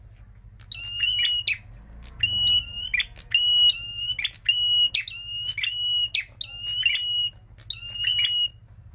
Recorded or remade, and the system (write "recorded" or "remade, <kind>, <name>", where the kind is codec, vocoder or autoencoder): recorded